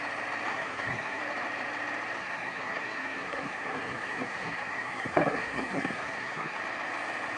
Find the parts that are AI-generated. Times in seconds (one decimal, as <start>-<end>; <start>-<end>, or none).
0.5-1.2; 2.2-6.6